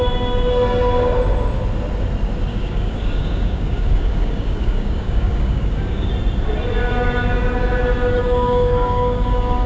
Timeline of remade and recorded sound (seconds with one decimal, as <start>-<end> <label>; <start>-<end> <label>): 0.0-2.5 recorded; 2.5-6.1 remade; 6.1-8.2 recorded; 8.2-9.7 remade